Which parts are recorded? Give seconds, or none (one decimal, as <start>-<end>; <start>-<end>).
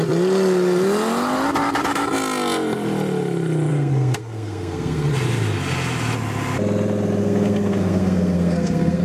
0.0-3.7; 5.1-7.2